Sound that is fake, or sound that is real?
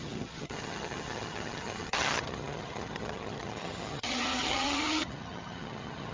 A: fake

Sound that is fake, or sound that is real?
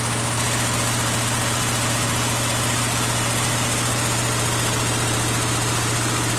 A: real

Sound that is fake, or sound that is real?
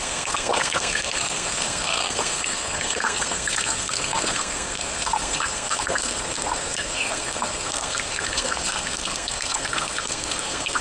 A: fake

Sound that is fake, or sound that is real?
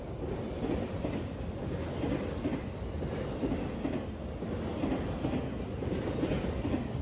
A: real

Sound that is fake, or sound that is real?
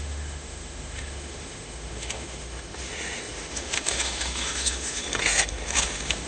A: fake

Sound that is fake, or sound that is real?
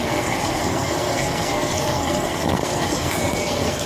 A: fake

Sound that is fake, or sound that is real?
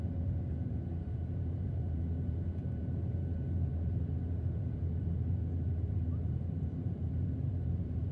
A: fake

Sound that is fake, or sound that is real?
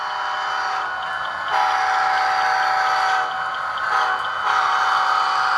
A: real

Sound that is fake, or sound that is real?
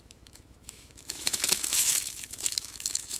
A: fake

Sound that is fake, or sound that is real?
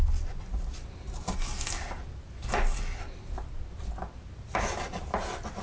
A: real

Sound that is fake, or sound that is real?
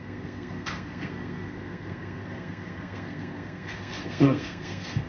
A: fake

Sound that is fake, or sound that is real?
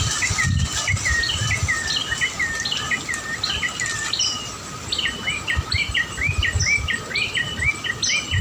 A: real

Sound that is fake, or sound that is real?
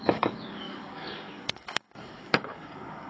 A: fake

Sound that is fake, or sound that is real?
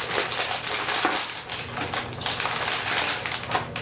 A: real